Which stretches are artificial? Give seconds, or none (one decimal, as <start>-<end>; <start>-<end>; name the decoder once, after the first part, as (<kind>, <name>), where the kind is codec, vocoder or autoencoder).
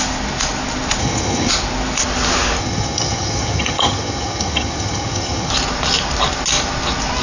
1.0-1.5 (vocoder, HiFi-GAN); 2.6-5.5